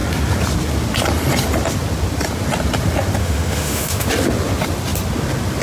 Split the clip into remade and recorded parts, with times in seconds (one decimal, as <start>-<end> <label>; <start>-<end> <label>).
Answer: 0.0-3.2 recorded; 3.2-4.1 remade; 4.1-5.6 recorded